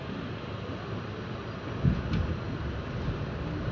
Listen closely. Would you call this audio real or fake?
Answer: real